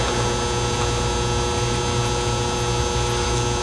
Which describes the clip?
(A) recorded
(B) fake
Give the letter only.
A